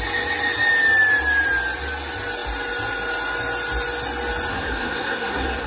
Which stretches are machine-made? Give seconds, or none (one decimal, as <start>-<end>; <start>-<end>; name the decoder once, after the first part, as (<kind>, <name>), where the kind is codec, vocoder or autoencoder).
4.5-5.7 (codec, SNAC)